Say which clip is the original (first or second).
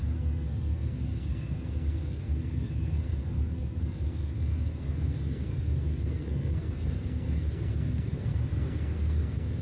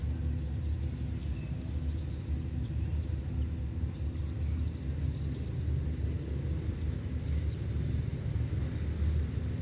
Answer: second